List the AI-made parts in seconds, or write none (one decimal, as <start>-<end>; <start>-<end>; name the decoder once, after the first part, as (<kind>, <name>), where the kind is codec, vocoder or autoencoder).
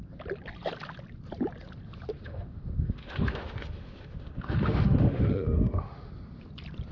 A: 2.1-6.1 (autoencoder, DAC-VAE)